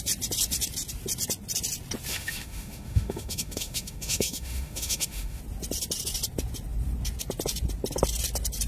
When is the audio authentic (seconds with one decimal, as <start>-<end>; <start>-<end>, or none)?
0.0-2.1; 5.4-8.7